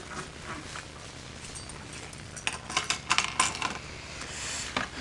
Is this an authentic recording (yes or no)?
yes